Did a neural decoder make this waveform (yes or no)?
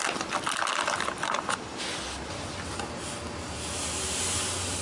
no